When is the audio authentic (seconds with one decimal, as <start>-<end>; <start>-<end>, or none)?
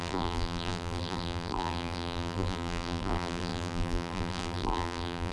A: none